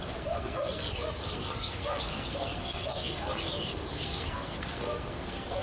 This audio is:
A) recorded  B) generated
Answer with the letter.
B